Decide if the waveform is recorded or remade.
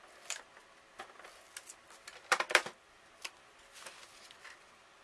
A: recorded